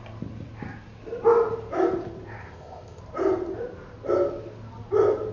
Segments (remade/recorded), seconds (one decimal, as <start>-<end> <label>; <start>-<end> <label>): 0.0-2.4 recorded; 2.4-3.0 remade; 3.0-5.3 recorded